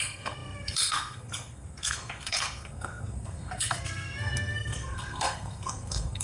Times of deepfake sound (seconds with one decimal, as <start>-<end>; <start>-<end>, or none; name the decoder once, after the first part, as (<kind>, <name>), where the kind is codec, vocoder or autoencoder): 0.0-6.2 (codec, SNAC)